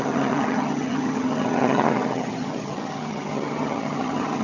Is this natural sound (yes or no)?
no